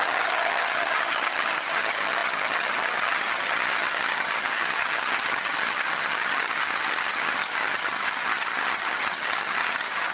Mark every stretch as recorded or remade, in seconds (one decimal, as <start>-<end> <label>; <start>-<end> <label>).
0.0-10.1 remade